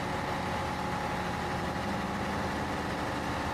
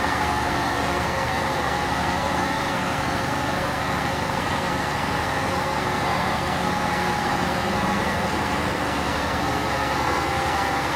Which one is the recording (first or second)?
first